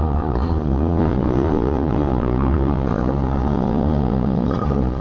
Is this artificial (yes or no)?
yes